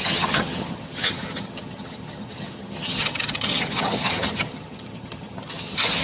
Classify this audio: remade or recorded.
remade